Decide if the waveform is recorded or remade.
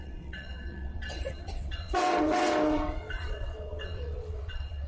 remade